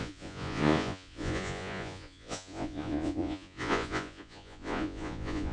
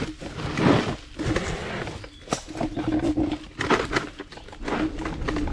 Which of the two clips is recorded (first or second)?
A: second